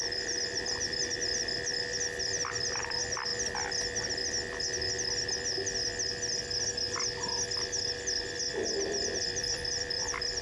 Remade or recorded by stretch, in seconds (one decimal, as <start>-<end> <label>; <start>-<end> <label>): 0.0-1.0 remade; 1.0-2.8 recorded; 2.8-3.3 remade; 3.3-8.5 recorded; 8.5-10.4 remade